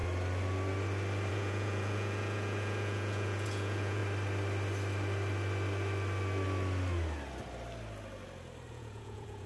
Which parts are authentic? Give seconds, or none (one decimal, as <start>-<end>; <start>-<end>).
0.0-1.3; 4.0-8.7